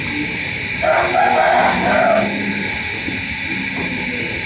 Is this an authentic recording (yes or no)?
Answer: yes